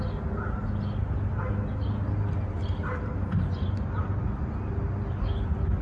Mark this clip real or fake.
real